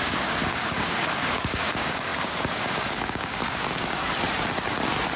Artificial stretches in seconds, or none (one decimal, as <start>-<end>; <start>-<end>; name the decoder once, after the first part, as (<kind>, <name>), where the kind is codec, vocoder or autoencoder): 0.0-4.0 (codec, DAC)